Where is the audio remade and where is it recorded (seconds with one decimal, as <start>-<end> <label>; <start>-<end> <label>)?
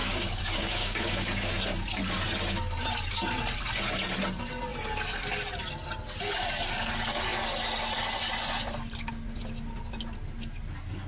0.0-1.5 remade; 1.5-11.1 recorded